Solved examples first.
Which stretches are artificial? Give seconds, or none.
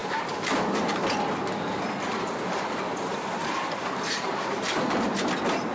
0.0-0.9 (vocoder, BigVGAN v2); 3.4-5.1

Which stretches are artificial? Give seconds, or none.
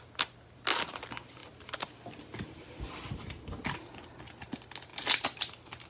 none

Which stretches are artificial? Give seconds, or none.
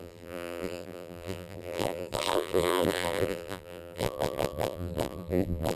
0.0-5.8 (vocoder, BigVGAN v2)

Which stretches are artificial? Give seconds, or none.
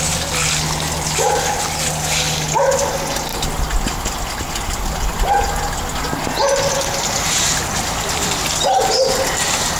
none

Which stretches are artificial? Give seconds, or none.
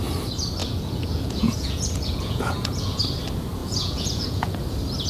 0.6-3.0 (vocoder, Vocos); 3.6-4.6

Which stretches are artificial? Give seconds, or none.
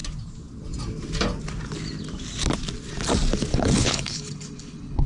3.5-5.1 (codec, HILCodec)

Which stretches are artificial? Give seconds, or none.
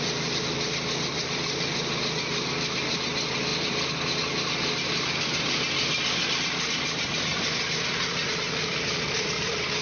none